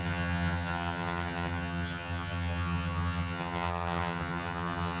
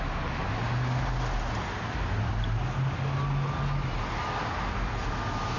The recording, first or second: second